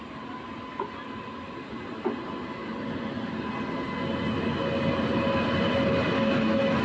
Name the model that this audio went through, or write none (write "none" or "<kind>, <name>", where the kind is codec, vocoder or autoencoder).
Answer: none